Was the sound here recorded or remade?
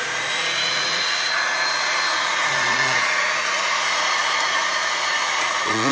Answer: remade